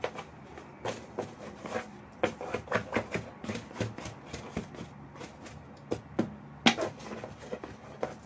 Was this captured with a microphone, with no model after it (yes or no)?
yes